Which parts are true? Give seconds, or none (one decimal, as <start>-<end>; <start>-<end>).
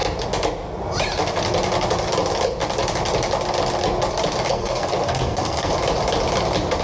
0.0-4.5; 5.7-6.8